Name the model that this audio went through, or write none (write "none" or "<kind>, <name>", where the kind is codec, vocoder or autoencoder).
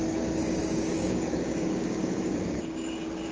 codec, DAC